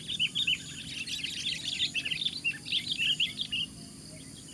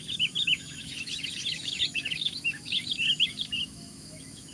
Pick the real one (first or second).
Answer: first